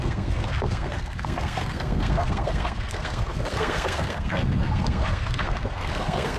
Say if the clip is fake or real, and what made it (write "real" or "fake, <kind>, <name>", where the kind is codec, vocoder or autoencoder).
fake, codec, SNAC